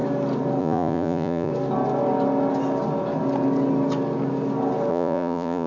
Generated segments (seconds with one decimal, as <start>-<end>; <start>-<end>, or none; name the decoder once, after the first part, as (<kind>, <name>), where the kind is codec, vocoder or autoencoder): 0.6-1.5 (vocoder, Vocos); 4.9-5.7